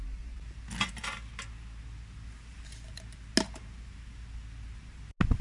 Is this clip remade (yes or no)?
no